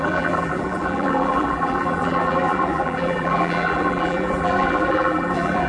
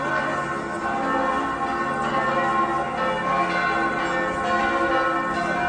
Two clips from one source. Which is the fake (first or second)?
first